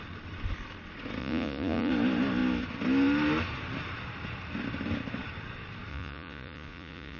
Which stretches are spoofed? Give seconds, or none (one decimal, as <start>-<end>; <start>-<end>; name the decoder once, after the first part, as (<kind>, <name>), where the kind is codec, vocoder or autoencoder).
1.2-1.9 (vocoder, Vocos); 5.9-7.2